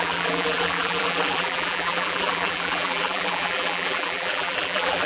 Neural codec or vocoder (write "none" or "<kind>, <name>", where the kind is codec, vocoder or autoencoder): vocoder, BigVGAN v2